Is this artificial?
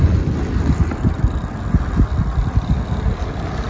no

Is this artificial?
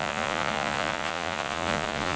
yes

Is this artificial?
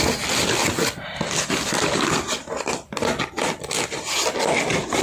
no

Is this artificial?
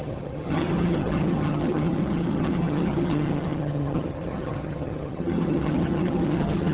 yes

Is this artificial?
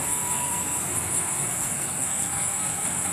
yes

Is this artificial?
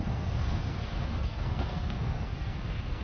yes